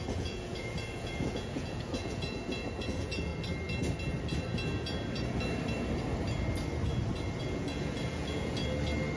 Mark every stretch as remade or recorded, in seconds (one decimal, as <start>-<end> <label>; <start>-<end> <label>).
0.0-3.3 remade; 3.3-7.4 recorded; 7.4-8.6 remade; 8.6-9.2 recorded